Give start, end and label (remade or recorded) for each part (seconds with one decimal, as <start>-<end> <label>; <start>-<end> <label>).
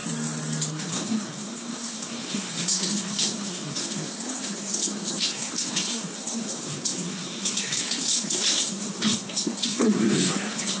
0.0-0.7 recorded; 0.7-10.8 remade